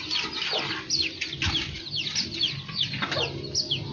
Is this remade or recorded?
recorded